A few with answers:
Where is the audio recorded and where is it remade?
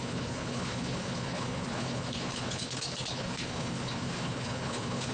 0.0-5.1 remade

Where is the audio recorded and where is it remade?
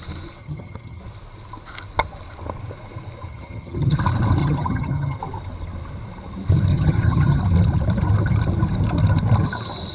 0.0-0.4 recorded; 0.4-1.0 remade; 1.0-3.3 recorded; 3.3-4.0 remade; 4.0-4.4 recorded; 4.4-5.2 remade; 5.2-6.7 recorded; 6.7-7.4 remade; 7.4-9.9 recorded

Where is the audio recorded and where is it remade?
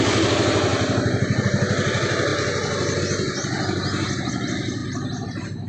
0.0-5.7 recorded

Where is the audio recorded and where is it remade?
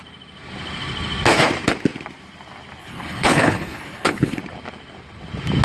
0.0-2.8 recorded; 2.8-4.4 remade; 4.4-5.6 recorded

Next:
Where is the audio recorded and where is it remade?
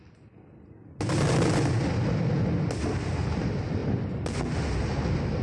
0.0-5.4 recorded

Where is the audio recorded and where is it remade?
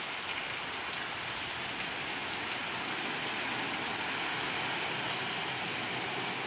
0.0-6.5 recorded